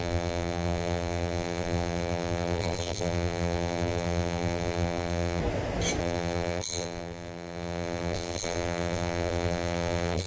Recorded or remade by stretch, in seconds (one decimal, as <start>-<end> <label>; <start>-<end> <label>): 0.0-5.4 remade; 5.4-6.0 recorded; 6.0-10.3 remade